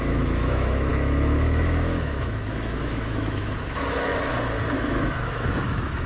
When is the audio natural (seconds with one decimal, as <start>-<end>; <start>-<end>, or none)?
4.1-4.7